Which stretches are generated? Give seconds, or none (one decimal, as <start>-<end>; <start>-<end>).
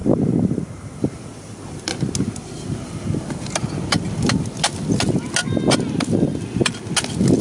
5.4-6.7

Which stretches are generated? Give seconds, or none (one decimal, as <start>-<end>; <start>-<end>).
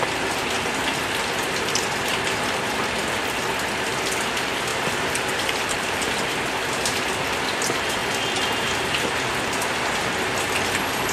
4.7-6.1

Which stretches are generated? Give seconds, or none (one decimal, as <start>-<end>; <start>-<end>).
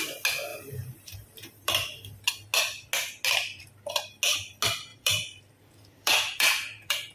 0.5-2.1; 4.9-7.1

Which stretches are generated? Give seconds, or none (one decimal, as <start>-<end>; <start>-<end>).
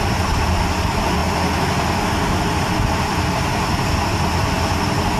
none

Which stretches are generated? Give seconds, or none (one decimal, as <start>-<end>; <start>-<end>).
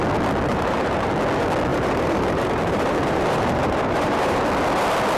0.5-1.1; 1.7-4.4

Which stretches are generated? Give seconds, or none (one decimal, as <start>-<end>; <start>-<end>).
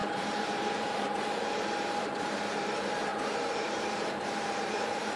0.0-5.2